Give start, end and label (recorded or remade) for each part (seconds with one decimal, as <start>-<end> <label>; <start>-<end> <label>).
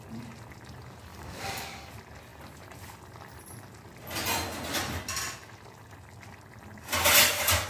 0.0-1.1 recorded; 1.1-1.9 remade; 1.9-7.7 recorded